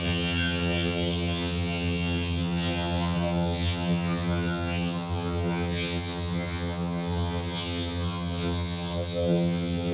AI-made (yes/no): yes